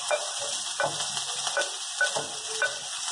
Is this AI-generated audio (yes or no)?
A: no